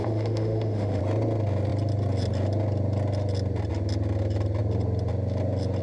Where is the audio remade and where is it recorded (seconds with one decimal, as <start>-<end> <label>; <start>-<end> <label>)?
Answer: 0.0-1.0 remade; 1.0-5.8 recorded